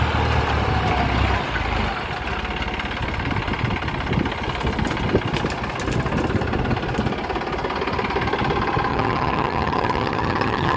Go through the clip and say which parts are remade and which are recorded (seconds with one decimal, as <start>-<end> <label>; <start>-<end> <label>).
0.0-8.9 recorded; 8.9-10.8 remade